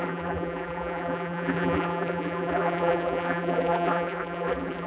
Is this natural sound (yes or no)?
no